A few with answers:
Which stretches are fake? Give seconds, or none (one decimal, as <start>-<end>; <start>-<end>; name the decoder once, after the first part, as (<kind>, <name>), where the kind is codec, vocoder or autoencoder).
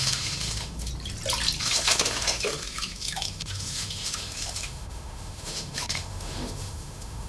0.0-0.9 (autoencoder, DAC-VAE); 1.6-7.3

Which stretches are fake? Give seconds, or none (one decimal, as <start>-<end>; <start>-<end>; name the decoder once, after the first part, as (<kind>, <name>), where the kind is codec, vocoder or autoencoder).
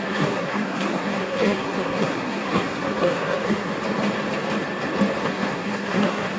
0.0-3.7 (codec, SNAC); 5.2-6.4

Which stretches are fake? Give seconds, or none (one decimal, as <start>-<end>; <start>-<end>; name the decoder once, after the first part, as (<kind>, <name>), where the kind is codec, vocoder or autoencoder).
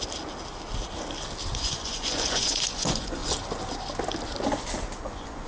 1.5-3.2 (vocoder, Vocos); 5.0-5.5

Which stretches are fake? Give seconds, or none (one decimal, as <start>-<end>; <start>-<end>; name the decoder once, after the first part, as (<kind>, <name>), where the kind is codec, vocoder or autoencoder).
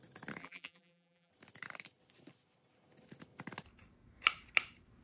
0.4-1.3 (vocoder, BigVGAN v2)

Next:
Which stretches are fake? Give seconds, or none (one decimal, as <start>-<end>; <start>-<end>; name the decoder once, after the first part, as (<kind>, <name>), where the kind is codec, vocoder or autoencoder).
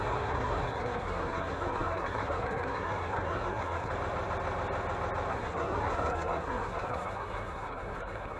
0.0-3.9 (codec, SNAC); 5.3-8.4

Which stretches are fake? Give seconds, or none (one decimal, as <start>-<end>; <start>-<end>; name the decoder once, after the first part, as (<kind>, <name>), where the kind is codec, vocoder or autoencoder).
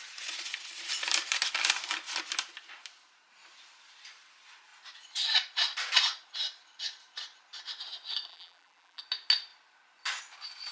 8.3-9.0 (vocoder, BigVGAN v2)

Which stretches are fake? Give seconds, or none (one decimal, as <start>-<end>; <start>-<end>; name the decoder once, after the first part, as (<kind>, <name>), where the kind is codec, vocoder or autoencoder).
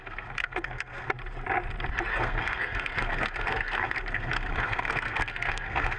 0.0-1.1 (codec, SNAC); 2.1-6.0